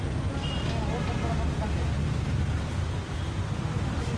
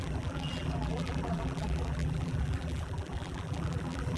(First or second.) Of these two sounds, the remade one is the second